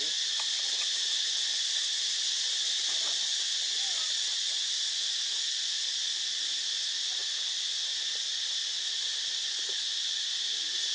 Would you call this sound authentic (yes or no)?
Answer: yes